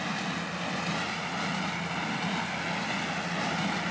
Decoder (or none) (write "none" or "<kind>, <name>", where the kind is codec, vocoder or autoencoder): none